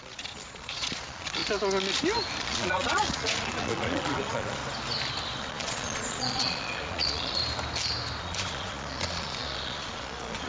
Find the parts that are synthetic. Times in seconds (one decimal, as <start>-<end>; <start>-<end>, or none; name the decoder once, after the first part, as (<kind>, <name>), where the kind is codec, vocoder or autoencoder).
0.0-1.4 (vocoder, Vocos); 2.4-4.6; 5.4-7.4; 8.2-10.5